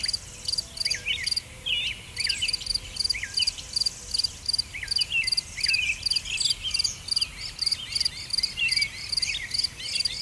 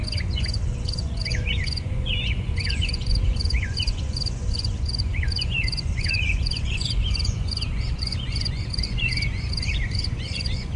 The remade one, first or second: second